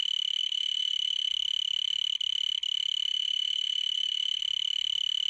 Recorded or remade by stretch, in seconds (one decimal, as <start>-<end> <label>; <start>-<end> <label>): 0.0-0.4 recorded; 0.4-1.3 remade; 1.3-3.1 recorded; 3.1-4.4 remade; 4.4-5.3 recorded